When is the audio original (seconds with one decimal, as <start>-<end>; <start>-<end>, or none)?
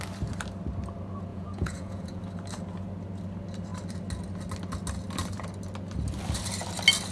0.0-1.3; 2.2-7.1